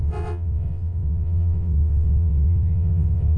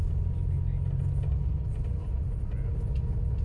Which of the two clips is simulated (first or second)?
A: first